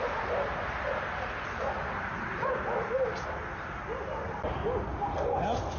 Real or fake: real